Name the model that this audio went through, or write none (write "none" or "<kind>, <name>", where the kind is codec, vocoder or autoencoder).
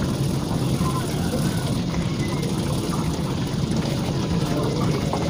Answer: none